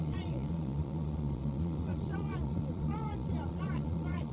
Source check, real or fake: fake